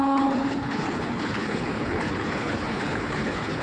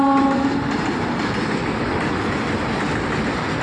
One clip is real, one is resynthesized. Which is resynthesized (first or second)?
first